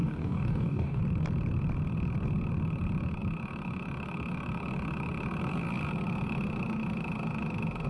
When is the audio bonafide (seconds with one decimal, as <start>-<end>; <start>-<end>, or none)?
1.0-7.9